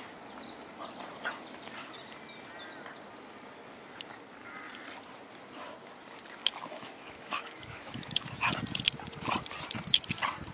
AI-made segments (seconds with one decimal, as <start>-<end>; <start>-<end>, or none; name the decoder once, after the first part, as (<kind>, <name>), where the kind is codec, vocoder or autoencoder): 6.4-8.5 (autoencoder, DAC-VAE)